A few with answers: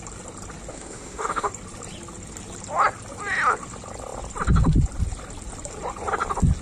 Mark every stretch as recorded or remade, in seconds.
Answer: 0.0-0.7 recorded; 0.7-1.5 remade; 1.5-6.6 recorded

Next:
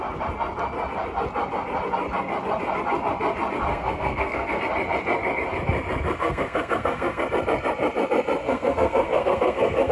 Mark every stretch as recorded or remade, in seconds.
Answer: 0.0-3.7 recorded; 3.7-4.6 remade; 4.6-6.2 recorded; 6.2-7.2 remade; 7.2-8.4 recorded; 8.4-9.9 remade